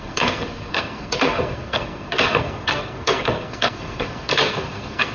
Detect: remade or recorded remade